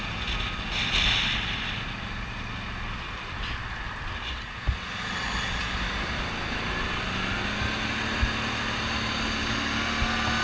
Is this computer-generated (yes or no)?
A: no